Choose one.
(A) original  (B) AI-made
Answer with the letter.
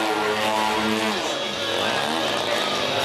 A